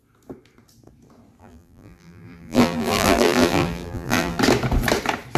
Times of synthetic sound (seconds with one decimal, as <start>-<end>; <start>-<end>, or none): 1.4-4.4